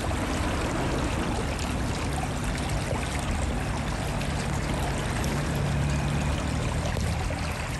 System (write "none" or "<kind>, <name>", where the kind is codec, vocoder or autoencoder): none